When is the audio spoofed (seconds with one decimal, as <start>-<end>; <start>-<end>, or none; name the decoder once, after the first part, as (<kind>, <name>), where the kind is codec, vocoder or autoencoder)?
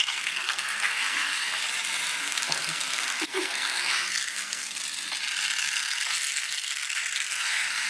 0.0-1.6 (codec, SNAC); 2.2-4.8; 5.6-7.9